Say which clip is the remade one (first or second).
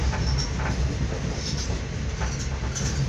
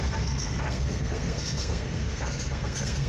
second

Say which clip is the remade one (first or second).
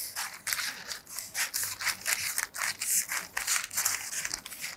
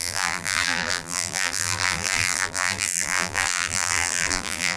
second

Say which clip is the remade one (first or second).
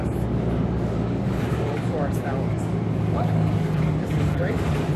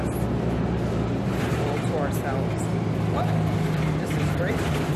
first